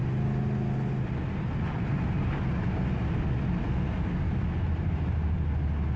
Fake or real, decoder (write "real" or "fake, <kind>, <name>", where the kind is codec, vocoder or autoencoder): real